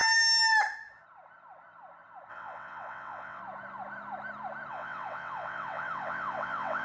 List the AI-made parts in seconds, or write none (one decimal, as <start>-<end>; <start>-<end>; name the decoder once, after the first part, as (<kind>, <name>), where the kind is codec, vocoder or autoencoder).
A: 2.3-3.4 (vocoder, WaveNeXt); 4.7-6.8

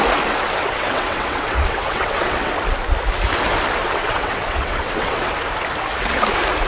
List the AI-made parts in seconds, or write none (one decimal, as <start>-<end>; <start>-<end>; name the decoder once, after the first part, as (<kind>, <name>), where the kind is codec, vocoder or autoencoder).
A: 0.6-2.5 (vocoder, WaveNeXt); 3.8-5.3

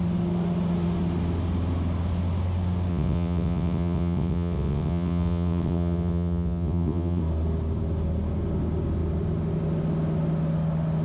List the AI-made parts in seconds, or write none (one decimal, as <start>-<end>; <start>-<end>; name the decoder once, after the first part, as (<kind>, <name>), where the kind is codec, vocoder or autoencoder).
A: 2.9-7.2 (vocoder, WaveNeXt)